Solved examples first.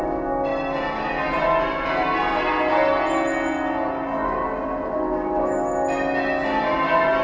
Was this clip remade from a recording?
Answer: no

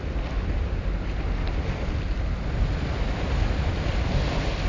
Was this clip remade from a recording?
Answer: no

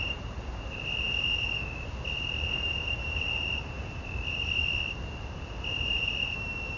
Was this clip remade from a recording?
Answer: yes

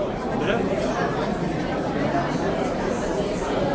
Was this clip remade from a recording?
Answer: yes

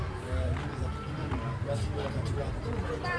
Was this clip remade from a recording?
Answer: no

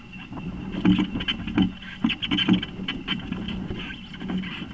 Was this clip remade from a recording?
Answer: no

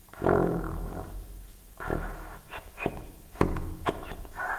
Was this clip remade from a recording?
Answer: yes